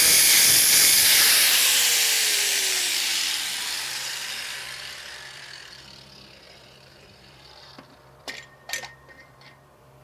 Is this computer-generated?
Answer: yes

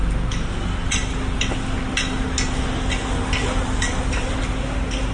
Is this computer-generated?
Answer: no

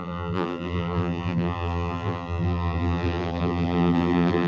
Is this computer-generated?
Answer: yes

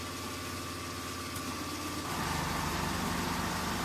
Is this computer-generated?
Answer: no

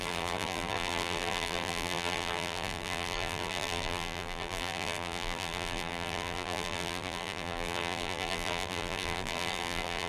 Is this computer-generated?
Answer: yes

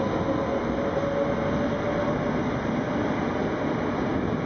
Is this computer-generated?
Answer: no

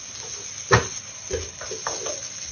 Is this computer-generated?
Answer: no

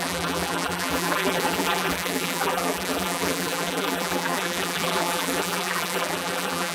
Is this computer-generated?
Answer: yes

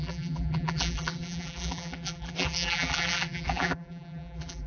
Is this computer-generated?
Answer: yes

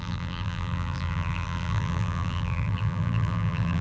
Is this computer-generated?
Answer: yes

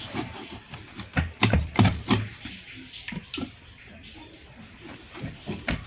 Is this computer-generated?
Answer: yes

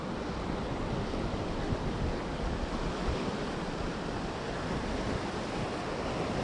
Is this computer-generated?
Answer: no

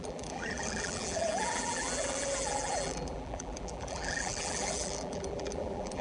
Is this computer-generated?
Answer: yes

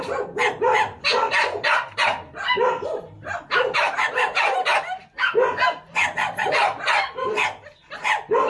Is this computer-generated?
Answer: no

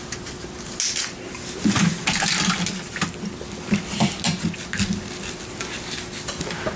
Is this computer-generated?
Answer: no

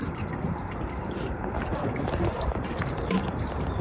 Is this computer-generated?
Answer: yes